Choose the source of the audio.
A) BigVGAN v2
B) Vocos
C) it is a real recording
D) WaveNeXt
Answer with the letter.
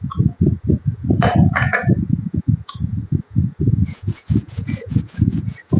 B